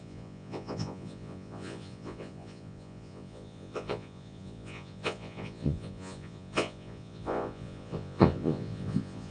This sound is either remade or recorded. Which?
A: remade